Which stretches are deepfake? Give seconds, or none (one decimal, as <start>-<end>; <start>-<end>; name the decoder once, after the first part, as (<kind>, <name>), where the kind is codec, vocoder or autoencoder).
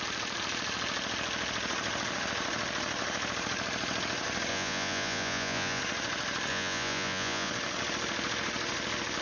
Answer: 4.5-5.8 (vocoder, Vocos); 6.5-7.5